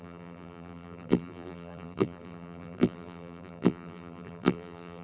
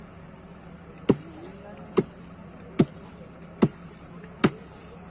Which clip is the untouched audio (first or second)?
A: second